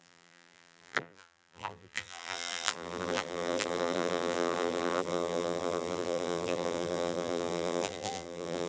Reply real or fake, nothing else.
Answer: fake